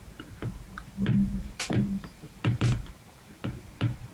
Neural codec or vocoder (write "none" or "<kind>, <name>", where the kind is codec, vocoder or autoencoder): vocoder, BigVGAN v2